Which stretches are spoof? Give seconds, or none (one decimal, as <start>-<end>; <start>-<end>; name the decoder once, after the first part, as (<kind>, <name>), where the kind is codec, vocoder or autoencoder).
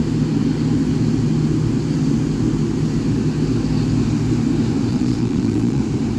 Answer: 4.9-5.8 (vocoder, Vocos)